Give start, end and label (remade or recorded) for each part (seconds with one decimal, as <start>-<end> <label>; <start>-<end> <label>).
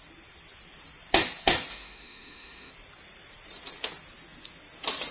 0.0-1.7 recorded; 1.7-2.7 remade; 2.7-5.1 recorded